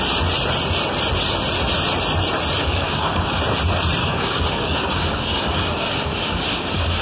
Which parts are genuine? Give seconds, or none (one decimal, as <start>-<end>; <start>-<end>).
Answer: 0.0-2.6; 3.4-4.0